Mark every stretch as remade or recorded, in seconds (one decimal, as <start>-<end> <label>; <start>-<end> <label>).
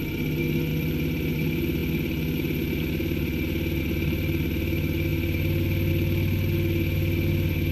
0.0-0.7 recorded; 0.7-1.3 remade; 1.3-7.7 recorded